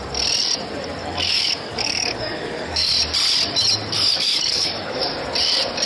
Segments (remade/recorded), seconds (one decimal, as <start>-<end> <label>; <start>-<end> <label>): 0.0-1.0 recorded; 1.0-2.9 remade; 2.9-4.1 recorded; 4.1-5.0 remade; 5.0-5.9 recorded